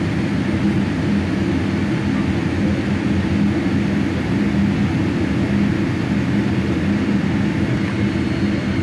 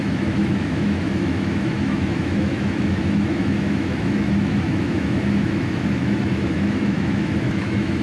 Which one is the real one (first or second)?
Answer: first